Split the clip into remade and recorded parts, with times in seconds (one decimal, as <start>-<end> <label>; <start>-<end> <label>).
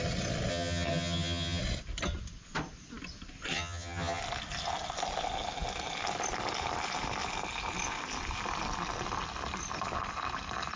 0.0-0.5 recorded; 0.5-1.6 remade; 1.6-3.5 recorded; 3.5-4.2 remade; 4.2-10.8 recorded